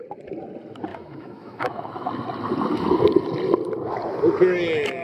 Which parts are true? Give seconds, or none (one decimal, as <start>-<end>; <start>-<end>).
0.0-0.9; 2.1-5.0